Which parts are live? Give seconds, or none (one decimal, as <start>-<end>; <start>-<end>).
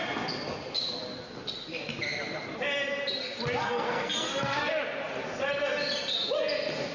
0.0-3.6; 4.7-6.9